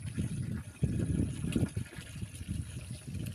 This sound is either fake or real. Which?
real